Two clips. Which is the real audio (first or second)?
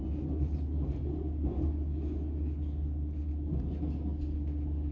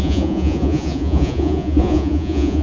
first